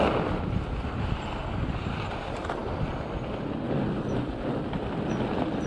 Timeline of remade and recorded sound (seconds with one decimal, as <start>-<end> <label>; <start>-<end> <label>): 0.0-5.7 recorded